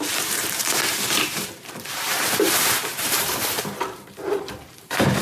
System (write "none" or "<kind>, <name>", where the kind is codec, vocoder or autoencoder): vocoder, BigVGAN v2